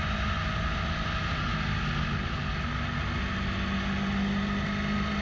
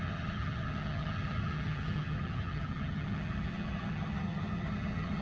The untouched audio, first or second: first